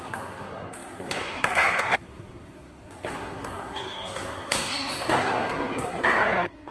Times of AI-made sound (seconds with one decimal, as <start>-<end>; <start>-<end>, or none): 0.0-6.7